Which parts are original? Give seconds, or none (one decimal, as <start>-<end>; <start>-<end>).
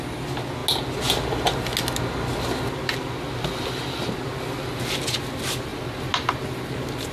0.0-7.1